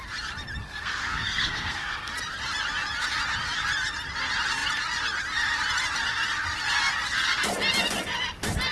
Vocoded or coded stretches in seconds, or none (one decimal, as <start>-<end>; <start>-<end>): 0.6-2.1